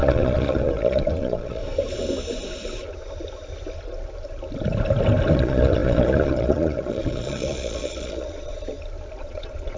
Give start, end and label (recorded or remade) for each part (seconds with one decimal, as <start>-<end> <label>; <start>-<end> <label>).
0.0-1.6 remade; 1.6-5.3 recorded; 5.3-8.5 remade; 8.5-9.2 recorded; 9.2-9.8 remade